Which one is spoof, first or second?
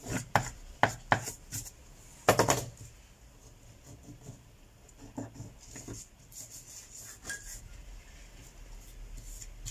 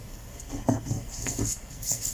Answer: second